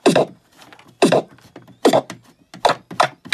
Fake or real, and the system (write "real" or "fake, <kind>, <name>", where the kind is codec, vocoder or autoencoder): real